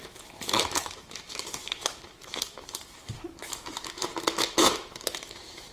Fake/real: fake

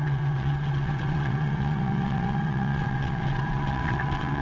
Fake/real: fake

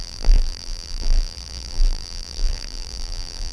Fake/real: fake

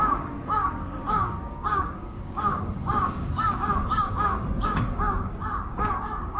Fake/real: fake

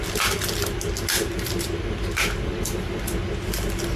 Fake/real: real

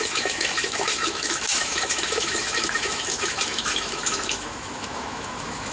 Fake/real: fake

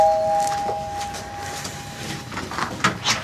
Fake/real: real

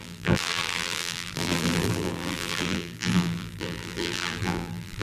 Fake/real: fake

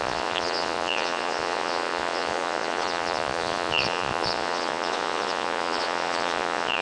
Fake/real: fake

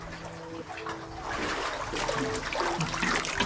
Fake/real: real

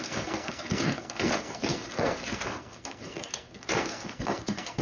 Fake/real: fake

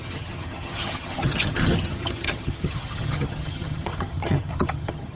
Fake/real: fake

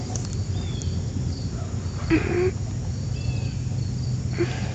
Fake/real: real